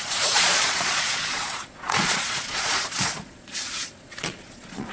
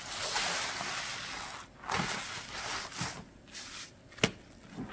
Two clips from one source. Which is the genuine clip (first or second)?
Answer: second